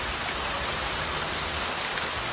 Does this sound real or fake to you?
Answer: real